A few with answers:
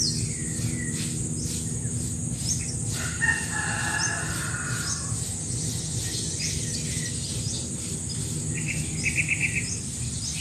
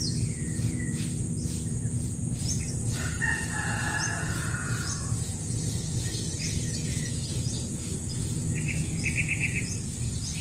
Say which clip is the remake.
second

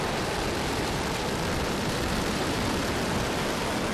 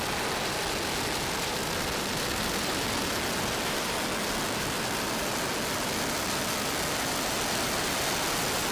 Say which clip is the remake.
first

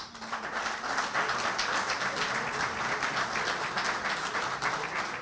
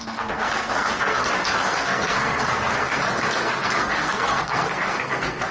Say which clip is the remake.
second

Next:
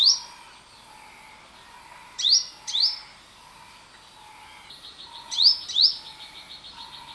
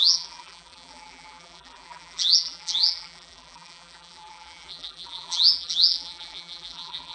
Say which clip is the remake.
second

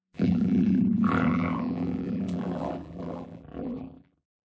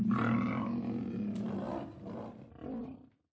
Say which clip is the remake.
first